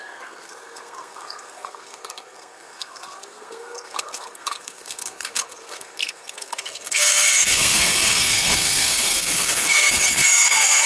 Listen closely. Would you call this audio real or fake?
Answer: fake